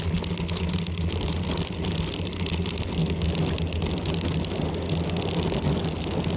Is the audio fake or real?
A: real